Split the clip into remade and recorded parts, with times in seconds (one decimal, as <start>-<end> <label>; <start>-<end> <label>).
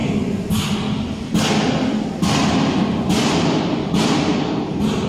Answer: 0.0-3.1 recorded; 3.1-5.1 remade